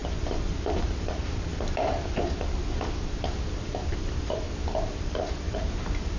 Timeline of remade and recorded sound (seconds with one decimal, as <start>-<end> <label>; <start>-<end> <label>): 0.0-1.1 remade; 1.1-3.9 recorded; 3.9-4.5 remade; 4.5-4.9 recorded; 4.9-5.6 remade; 5.6-6.2 recorded